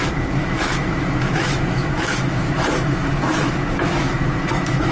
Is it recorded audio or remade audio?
remade